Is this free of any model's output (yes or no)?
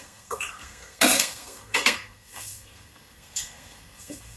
no